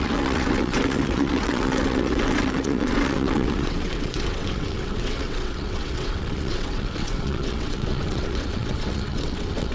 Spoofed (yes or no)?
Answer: yes